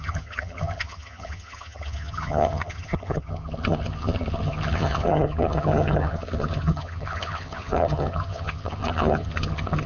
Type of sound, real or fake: fake